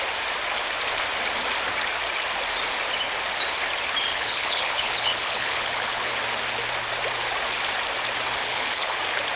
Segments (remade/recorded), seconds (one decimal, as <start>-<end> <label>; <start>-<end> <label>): 0.0-4.1 recorded; 4.1-6.1 remade; 6.1-8.4 recorded; 8.4-9.0 remade; 9.0-9.4 recorded